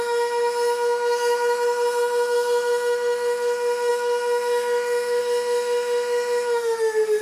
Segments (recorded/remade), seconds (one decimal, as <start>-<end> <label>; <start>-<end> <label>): 0.0-7.2 remade